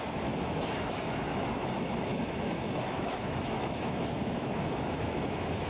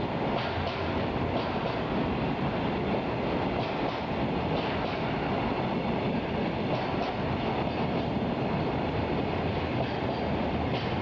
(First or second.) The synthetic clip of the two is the first